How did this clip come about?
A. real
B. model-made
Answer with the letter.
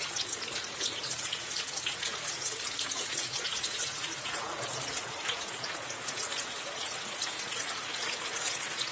B